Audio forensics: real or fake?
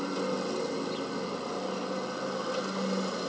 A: real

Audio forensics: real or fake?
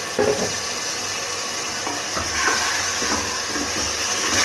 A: real